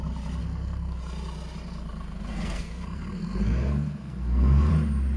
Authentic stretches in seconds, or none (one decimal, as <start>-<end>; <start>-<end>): 0.0-0.4; 1.0-2.3; 4.7-5.2